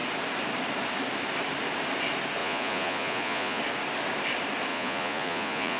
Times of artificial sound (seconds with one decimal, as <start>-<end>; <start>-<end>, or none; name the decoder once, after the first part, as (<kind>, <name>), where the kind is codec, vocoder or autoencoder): 2.4-3.6 (vocoder, Vocos); 4.7-5.8